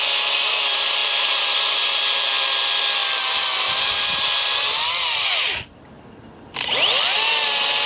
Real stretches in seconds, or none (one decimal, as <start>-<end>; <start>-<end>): 0.0-7.9